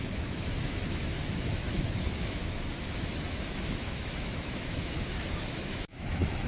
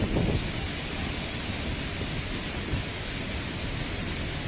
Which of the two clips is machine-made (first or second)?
first